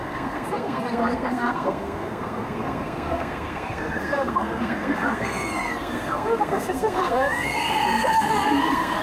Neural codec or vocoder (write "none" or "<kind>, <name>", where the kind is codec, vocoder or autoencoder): codec, SNAC